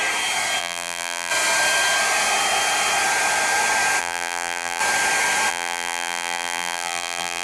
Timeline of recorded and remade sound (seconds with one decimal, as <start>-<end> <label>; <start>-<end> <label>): 0.0-0.6 recorded; 0.6-1.3 remade; 1.3-4.0 recorded; 4.0-4.8 remade; 4.8-5.5 recorded; 5.5-7.4 remade